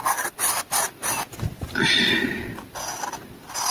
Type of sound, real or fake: real